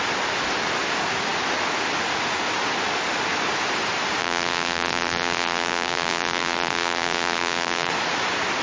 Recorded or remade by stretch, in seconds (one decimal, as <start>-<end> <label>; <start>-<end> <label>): 0.0-4.2 recorded; 4.2-7.9 remade; 7.9-8.6 recorded